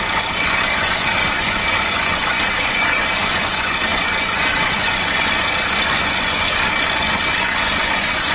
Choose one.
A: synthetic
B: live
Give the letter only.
A